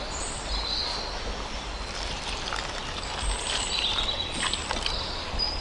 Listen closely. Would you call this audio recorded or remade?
recorded